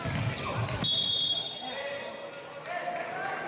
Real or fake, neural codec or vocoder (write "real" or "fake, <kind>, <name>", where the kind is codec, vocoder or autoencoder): real